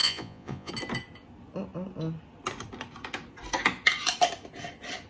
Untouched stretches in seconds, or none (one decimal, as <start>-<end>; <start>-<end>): 0.7-5.1